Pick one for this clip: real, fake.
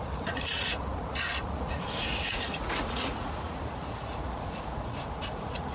fake